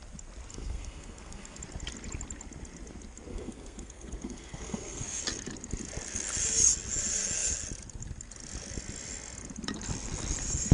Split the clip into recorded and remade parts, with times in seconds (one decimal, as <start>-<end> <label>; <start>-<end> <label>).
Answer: 0.0-0.5 recorded; 0.5-1.6 remade; 1.6-3.3 recorded; 3.3-5.2 remade; 5.2-10.7 recorded